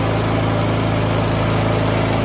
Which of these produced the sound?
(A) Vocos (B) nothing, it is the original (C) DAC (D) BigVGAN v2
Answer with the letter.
B